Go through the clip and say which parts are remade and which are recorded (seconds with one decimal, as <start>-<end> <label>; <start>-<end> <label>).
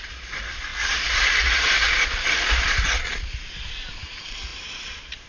0.0-0.7 remade; 0.7-3.9 recorded; 3.9-5.3 remade